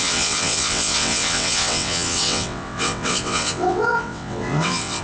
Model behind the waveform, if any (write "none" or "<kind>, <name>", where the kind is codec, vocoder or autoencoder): vocoder, WaveNeXt